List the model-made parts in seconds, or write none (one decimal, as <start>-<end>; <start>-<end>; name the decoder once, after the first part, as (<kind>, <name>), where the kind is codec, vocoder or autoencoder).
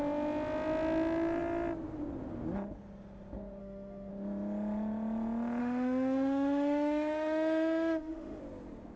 3.6-4.1 (autoencoder, DAC-VAE); 5.6-8.4